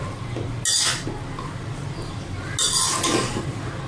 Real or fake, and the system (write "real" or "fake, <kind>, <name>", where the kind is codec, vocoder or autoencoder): real